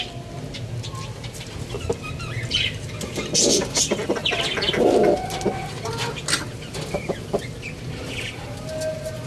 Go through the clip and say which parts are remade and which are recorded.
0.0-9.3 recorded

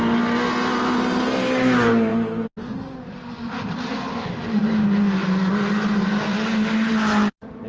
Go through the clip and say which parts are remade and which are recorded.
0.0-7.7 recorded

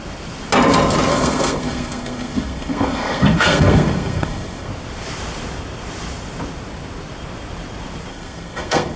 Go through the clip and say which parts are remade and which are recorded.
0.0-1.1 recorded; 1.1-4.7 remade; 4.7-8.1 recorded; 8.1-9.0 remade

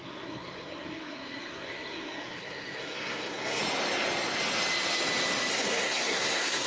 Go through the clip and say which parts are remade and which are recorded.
0.0-3.6 remade; 3.6-5.5 recorded; 5.5-6.7 remade

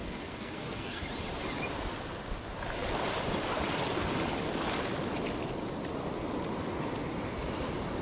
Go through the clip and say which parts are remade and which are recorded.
0.0-1.0 remade; 1.0-8.0 recorded

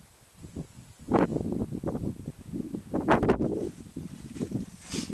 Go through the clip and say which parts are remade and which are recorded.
0.0-3.6 recorded; 3.6-4.4 remade; 4.4-5.1 recorded

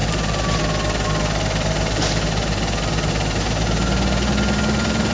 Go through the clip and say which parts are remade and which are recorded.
0.0-5.1 recorded